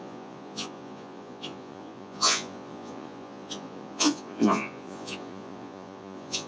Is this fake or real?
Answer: fake